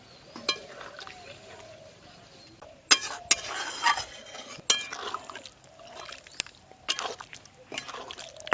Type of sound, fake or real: real